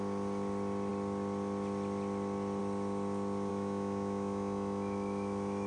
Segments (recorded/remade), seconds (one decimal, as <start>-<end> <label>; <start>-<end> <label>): 0.0-3.5 recorded; 3.5-5.7 remade